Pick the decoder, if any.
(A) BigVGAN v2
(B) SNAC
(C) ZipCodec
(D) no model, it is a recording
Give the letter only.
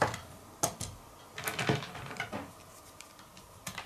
D